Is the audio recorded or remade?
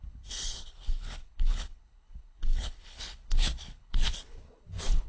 remade